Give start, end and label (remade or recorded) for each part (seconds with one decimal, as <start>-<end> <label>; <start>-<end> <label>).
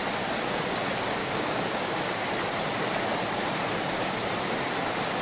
0.0-1.2 recorded; 1.2-2.3 remade; 2.3-5.2 recorded